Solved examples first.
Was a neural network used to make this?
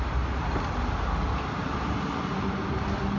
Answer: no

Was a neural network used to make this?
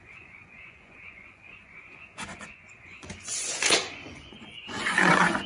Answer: yes